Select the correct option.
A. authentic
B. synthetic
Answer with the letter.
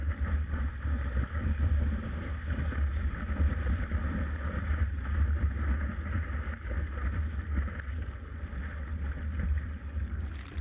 A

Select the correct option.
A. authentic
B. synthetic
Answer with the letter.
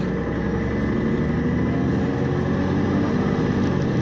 A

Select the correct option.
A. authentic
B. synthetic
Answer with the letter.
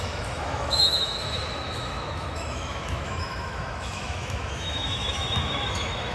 B